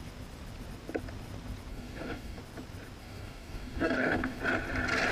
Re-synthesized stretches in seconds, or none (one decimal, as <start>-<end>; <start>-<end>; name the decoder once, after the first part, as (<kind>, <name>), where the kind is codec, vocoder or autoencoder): 1.7-2.4 (codec, DAC); 3.0-4.4